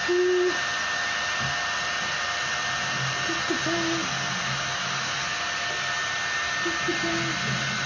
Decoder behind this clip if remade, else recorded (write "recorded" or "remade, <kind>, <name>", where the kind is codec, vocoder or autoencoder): recorded